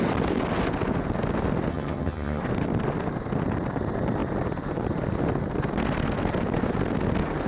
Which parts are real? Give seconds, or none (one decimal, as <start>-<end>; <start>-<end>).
0.0-1.7; 2.4-7.5